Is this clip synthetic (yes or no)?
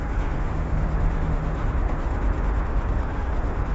yes